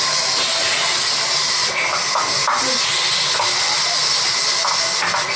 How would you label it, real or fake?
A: real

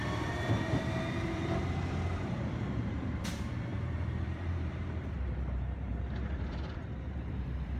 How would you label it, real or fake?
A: fake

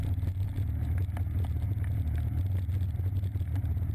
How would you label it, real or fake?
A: real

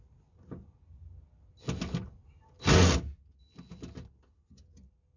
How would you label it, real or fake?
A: real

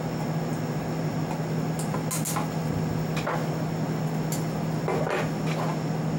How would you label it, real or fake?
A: real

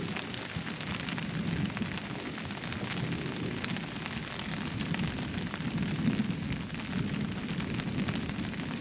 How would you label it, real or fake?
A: real